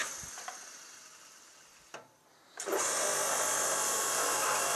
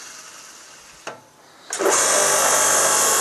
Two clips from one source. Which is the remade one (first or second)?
first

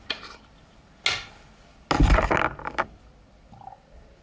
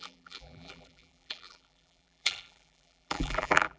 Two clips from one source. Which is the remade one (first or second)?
second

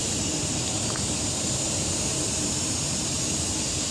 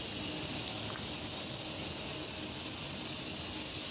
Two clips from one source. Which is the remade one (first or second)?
first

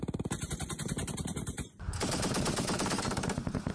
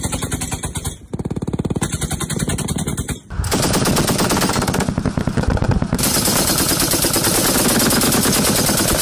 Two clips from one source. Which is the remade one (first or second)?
first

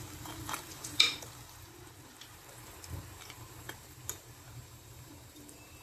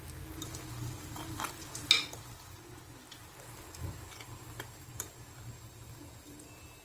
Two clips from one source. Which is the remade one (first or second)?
first